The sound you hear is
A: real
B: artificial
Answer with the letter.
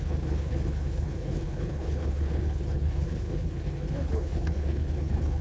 B